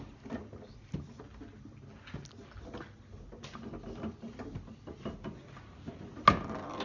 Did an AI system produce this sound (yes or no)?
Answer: no